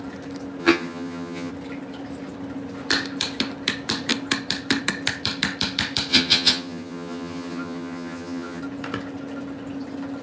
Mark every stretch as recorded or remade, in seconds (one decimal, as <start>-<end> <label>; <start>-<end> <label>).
0.0-0.6 recorded; 0.6-1.5 remade; 1.5-6.1 recorded; 6.1-8.6 remade; 8.6-10.2 recorded